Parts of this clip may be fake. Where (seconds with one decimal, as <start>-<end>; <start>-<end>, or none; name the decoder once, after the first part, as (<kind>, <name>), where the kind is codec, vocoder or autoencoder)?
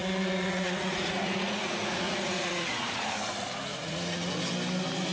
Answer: 0.0-3.1 (vocoder, Vocos); 3.7-4.3